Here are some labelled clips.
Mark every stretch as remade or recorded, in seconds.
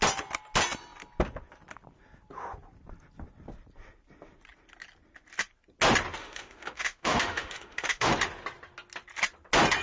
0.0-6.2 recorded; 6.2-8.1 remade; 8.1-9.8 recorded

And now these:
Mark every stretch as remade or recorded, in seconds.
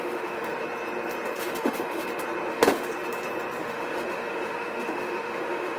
0.0-0.5 remade; 0.5-1.4 recorded; 1.4-2.0 remade; 2.0-2.5 recorded; 2.5-2.9 remade; 2.9-3.6 recorded; 3.6-5.8 remade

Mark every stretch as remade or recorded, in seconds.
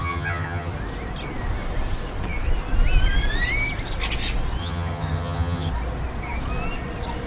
0.0-0.7 remade; 0.7-4.6 recorded; 4.6-5.7 remade; 5.7-7.3 recorded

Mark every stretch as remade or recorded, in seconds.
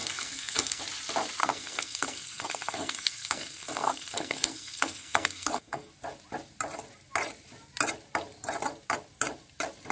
0.0-0.8 remade; 0.8-1.4 recorded; 1.4-5.9 remade; 5.9-9.9 recorded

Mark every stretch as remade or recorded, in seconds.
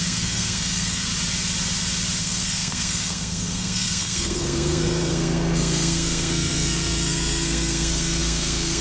0.0-1.1 remade; 1.1-2.2 recorded; 2.2-8.8 remade